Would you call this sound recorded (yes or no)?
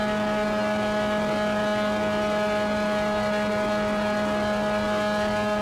yes